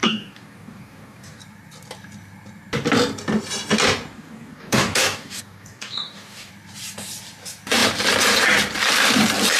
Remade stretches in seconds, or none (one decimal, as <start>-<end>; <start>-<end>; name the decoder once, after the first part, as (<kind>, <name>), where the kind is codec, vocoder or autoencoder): 0.0-1.4 (codec, DAC); 4.1-6.5